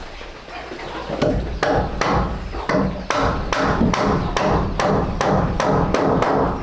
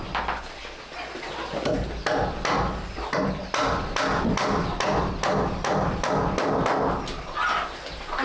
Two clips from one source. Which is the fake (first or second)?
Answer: first